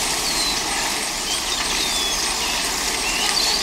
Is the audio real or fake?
real